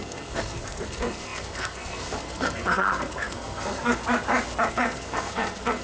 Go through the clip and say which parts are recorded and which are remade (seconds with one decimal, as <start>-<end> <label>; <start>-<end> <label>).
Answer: 0.0-4.0 remade; 4.0-4.7 recorded; 4.7-5.8 remade